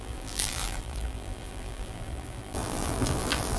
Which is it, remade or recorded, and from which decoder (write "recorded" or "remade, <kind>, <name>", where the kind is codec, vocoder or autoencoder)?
remade, vocoder, BigVGAN v2